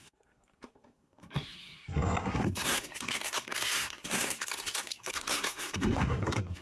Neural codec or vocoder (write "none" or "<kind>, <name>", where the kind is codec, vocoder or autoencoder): codec, SNAC